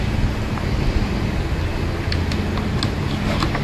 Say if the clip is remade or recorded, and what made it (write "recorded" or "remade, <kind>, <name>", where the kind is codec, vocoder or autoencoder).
recorded